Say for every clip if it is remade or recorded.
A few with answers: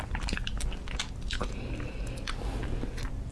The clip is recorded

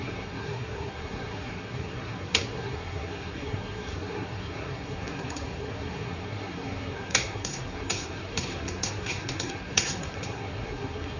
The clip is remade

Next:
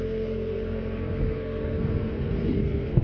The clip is remade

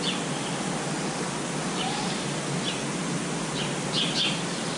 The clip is recorded